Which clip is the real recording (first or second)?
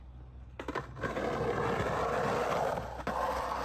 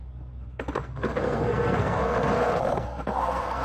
first